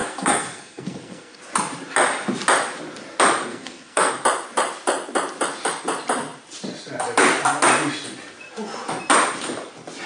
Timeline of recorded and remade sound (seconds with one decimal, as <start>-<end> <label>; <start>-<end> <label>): 0.0-1.4 remade; 1.4-3.5 recorded; 3.5-4.1 remade; 4.1-10.1 recorded